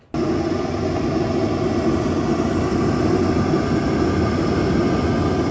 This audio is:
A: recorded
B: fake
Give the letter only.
A